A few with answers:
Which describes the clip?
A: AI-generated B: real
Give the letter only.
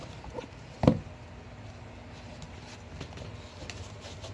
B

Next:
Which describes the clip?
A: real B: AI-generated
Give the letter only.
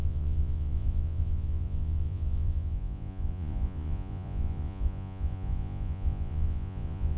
B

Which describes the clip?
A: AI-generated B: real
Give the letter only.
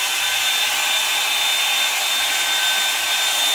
B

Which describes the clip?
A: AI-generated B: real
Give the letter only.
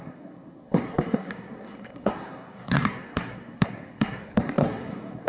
A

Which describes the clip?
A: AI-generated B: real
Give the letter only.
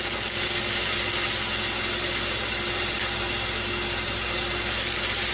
B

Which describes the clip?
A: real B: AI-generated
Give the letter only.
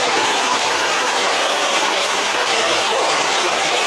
B